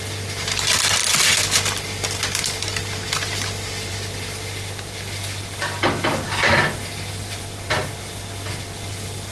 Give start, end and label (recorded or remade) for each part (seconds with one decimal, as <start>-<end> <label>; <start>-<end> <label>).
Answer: 0.0-9.3 recorded